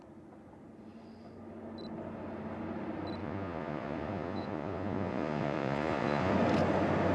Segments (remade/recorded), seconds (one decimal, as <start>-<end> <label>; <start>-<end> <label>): 0.0-3.2 recorded; 3.2-6.3 remade; 6.3-7.1 recorded